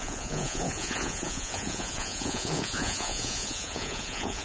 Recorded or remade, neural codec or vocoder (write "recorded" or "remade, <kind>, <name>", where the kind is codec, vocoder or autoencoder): remade, vocoder, Vocos